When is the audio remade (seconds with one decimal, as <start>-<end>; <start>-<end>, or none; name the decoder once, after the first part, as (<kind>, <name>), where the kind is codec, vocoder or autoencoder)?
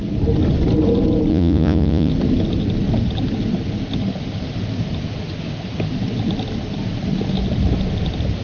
1.3-2.1 (vocoder, Vocos)